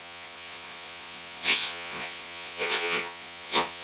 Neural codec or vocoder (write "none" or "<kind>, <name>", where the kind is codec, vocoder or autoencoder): vocoder, Vocos